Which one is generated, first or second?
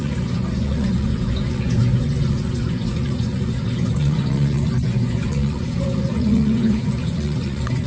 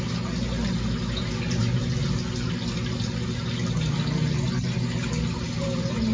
first